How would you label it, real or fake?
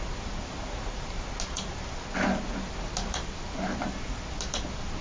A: real